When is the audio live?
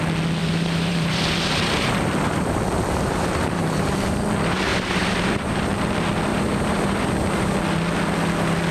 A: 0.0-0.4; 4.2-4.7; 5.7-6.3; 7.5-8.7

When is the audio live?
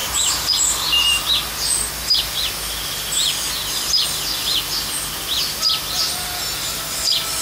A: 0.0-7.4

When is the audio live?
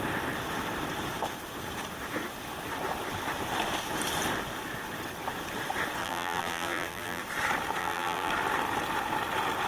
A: 0.0-6.0; 7.2-7.8; 8.3-9.7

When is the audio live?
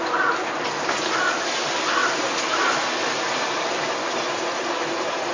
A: 0.0-5.3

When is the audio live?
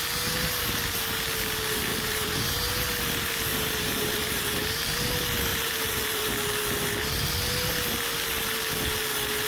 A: 0.0-1.9; 2.7-3.5; 5.0-5.5; 6.3-9.5